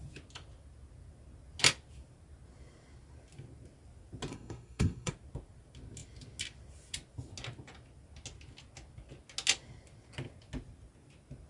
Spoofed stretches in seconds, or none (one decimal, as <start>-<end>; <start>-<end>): 4.3-5.1